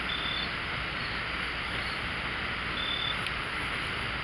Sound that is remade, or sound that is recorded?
recorded